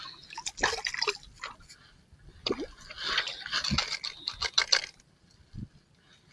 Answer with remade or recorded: recorded